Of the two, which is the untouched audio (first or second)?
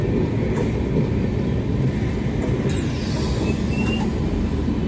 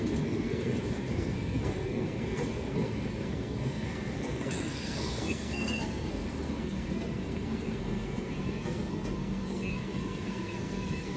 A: first